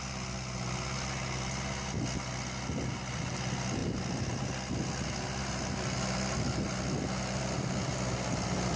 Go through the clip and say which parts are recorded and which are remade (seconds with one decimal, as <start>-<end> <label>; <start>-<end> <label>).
0.0-8.8 recorded